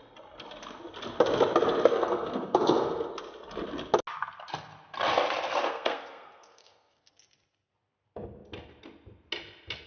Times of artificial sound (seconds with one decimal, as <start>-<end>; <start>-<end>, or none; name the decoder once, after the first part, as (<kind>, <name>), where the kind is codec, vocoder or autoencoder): 1.9-3.1 (codec, SNAC); 5.7-7.1